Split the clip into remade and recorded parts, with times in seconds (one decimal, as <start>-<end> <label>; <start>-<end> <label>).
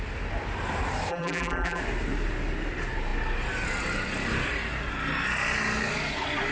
0.0-1.1 recorded; 1.1-1.8 remade; 1.8-6.5 recorded